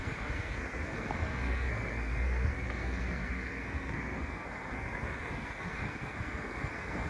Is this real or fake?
fake